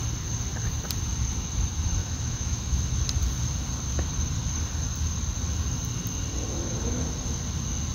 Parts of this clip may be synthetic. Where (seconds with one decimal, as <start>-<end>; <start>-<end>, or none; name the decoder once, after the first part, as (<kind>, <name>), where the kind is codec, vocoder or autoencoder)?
2.0-2.9 (autoencoder, DAC-VAE)